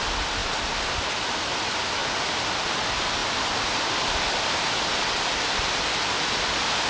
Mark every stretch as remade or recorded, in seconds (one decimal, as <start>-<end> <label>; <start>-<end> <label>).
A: 0.0-6.9 recorded